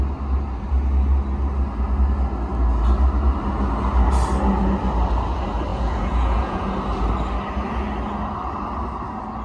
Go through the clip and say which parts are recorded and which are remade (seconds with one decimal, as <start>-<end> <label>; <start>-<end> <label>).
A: 0.0-5.7 recorded; 5.7-6.7 remade; 6.7-9.4 recorded